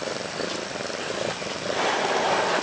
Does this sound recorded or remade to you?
remade